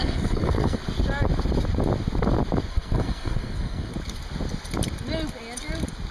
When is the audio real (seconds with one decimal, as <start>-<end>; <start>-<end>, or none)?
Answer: 0.8-2.7; 3.9-6.1